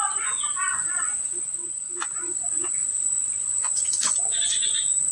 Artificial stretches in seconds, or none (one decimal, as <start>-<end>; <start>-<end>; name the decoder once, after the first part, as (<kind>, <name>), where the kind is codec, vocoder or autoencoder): 0.0-2.8 (vocoder, Vocos); 3.5-5.1